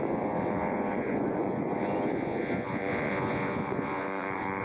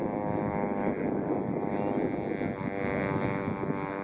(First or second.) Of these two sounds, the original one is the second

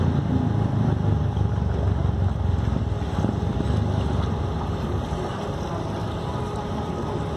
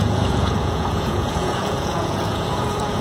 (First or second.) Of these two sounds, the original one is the first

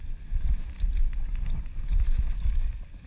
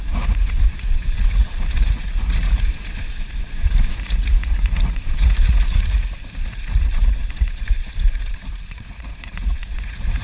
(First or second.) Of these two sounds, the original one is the first